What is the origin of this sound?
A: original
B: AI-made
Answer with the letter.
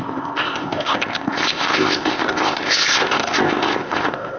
B